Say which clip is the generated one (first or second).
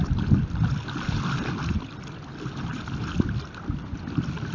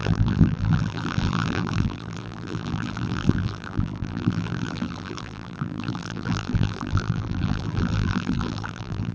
second